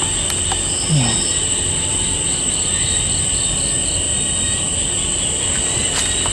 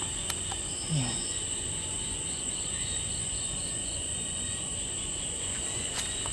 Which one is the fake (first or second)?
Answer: second